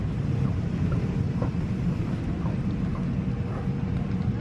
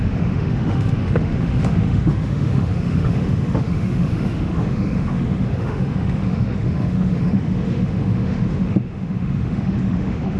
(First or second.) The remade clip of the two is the second